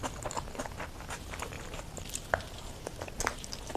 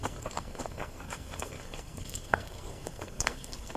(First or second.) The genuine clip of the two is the first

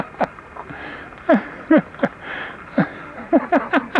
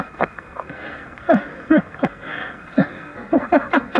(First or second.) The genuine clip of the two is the first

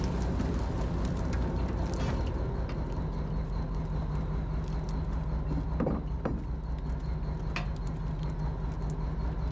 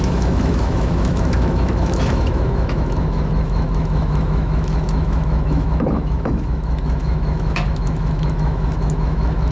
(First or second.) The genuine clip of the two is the first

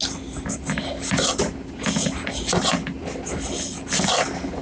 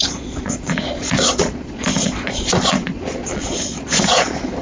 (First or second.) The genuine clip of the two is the first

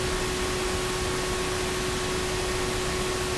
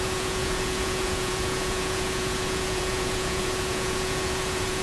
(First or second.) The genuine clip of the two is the first